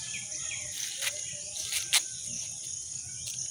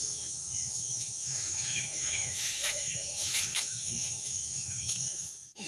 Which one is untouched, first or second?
first